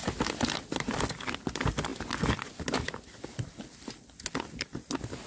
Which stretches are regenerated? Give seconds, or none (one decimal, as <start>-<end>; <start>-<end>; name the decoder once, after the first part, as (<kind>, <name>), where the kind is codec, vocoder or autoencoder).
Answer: none